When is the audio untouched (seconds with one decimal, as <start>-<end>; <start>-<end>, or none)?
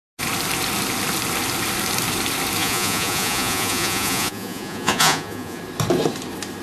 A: 0.0-2.6; 5.6-6.6